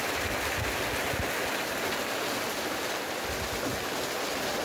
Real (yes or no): yes